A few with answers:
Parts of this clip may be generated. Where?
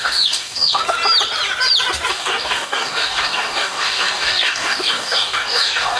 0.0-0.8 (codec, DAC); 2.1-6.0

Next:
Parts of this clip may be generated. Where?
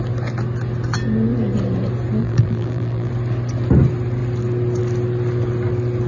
2.2-3.1 (vocoder, BigVGAN v2)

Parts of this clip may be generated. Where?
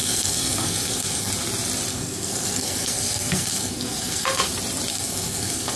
0.0-1.3 (codec, SNAC); 1.9-4.5; 4.9-5.8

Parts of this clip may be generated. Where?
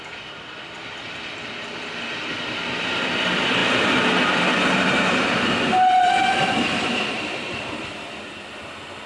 0.0-9.1 (vocoder, BigVGAN v2)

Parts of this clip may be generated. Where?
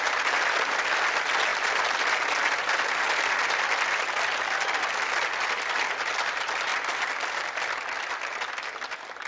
none